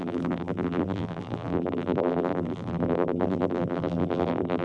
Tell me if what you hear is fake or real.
fake